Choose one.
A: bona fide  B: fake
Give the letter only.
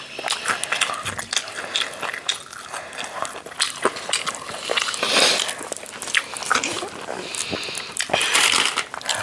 A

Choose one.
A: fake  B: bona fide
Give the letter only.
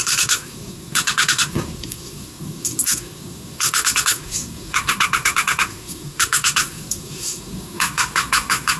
A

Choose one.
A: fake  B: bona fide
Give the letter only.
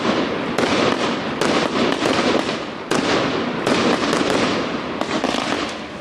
B